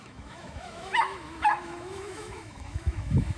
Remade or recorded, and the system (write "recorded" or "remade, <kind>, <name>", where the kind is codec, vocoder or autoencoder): remade, autoencoder, DAC-VAE